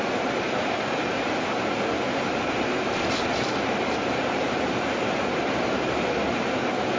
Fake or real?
fake